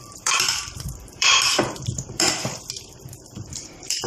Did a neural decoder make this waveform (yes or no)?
yes